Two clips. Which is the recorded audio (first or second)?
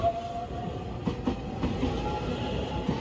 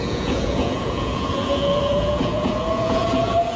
first